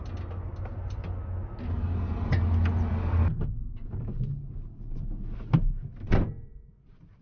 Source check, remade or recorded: recorded